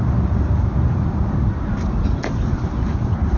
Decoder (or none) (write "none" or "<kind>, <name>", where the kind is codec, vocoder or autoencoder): none